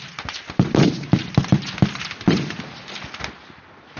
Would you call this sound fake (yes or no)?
no